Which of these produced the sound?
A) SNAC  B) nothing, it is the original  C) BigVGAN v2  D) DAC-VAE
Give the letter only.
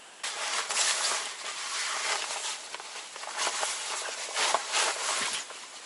B